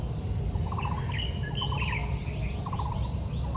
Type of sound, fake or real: real